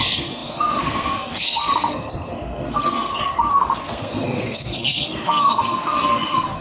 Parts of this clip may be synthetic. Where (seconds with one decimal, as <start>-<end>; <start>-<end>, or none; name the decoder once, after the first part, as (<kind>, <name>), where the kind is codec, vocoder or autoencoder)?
0.0-6.6 (codec, SNAC)